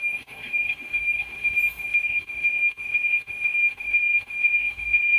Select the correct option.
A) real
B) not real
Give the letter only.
B